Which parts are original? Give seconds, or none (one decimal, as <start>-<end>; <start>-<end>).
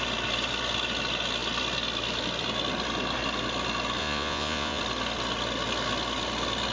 0.0-4.0; 4.8-6.7